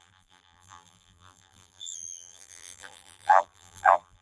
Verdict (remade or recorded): remade